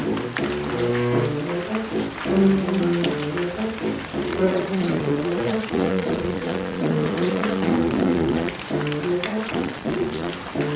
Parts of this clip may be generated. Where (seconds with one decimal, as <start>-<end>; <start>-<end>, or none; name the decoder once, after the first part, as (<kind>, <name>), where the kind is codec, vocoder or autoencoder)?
4.3-8.5 (vocoder, Vocos); 9.3-10.3